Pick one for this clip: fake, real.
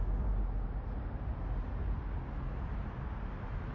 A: real